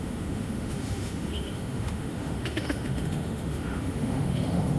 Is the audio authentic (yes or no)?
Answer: no